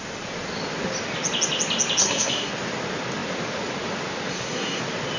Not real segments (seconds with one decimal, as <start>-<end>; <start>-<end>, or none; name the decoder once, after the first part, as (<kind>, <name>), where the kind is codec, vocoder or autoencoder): 2.0-2.5 (codec, SNAC); 4.3-4.8